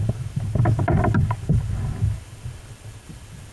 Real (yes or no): yes